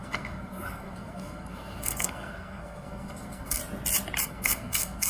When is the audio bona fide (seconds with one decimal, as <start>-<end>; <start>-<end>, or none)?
3.6-4.2